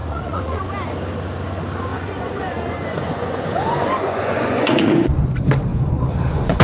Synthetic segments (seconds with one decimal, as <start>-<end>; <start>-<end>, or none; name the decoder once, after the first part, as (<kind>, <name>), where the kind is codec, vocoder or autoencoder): 0.0-0.6 (vocoder, Vocos); 1.9-5.2; 5.7-6.6